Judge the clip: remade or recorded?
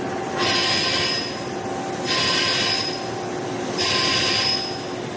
recorded